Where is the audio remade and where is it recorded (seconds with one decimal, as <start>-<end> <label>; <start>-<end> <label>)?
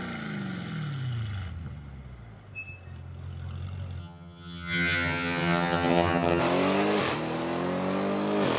0.0-4.0 recorded; 4.0-6.4 remade; 6.4-8.6 recorded